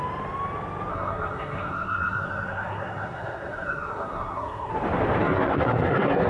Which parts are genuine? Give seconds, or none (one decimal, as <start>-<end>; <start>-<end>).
0.0-0.9; 4.7-5.2